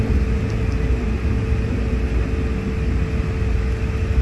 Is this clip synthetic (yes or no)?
no